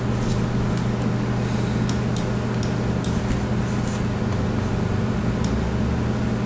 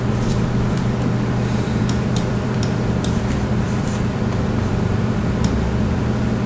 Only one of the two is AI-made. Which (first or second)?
second